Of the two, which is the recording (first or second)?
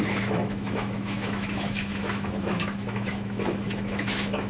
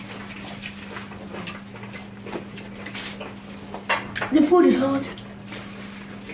second